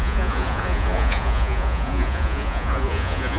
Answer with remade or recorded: remade